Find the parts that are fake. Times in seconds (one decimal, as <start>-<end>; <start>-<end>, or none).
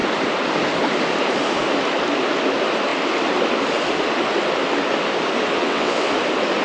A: 5.5-6.1